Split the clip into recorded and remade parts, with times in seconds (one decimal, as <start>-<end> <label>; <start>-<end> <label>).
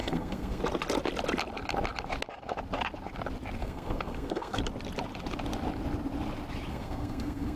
0.0-0.6 remade; 0.6-3.6 recorded; 3.6-4.6 remade; 4.6-6.7 recorded; 6.7-7.6 remade